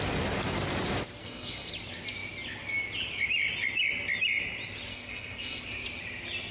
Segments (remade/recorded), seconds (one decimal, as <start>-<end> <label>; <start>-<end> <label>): 0.0-1.2 recorded; 1.2-1.7 remade; 1.7-4.9 recorded; 4.9-5.6 remade; 5.6-6.5 recorded